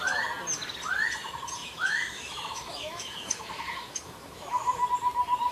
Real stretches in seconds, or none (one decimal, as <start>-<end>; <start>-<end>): 0.0-1.6; 4.9-5.5